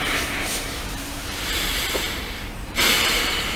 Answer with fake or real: fake